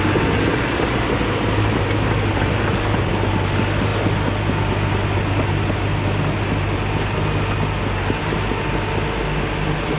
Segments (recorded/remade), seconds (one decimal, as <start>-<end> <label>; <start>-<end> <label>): 0.0-0.5 recorded; 0.5-3.1 remade; 3.1-10.0 recorded